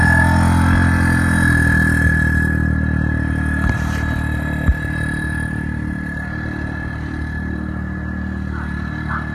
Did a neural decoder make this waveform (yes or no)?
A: no